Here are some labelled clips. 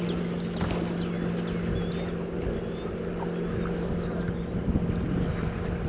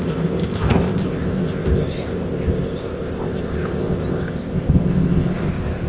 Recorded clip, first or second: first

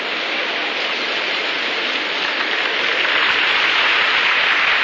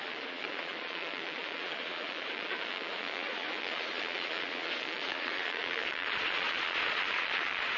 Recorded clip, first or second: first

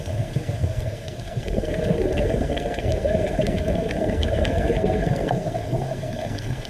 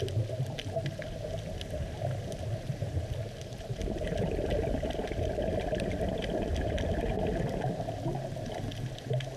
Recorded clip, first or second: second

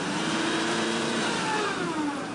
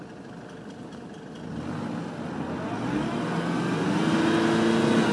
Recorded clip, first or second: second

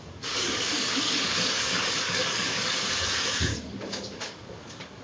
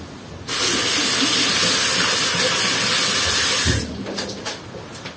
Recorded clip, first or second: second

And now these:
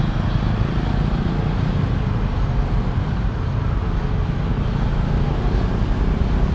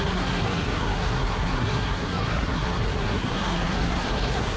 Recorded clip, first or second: first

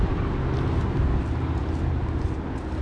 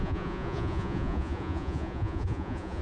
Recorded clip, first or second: first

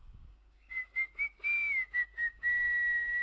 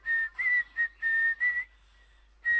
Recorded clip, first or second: second